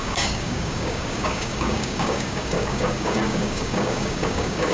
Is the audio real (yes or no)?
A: no